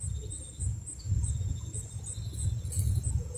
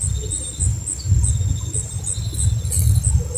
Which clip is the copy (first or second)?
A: first